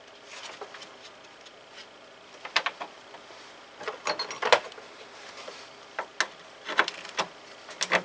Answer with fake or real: real